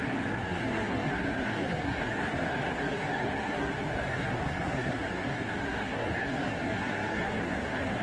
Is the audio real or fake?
fake